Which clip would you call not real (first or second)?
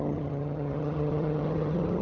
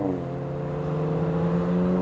first